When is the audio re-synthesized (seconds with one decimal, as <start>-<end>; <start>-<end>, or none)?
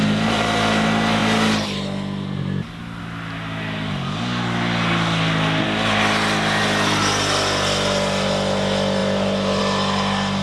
none